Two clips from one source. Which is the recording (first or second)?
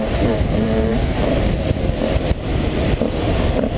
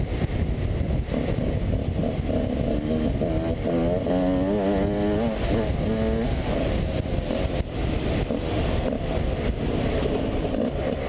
second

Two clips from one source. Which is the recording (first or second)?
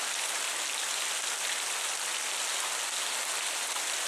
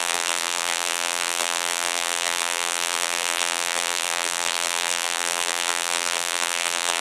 first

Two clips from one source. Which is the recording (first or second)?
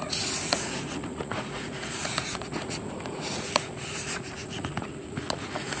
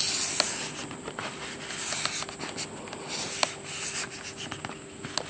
second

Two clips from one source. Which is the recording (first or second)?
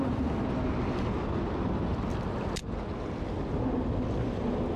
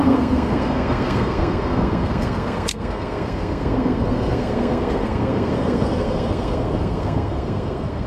first